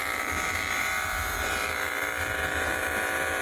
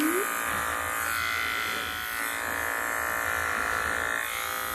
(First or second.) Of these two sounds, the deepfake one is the first